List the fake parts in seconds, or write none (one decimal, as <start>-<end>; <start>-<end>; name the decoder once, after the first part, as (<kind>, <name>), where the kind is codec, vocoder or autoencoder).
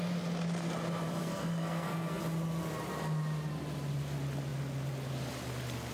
1.2-2.2 (codec, SNAC)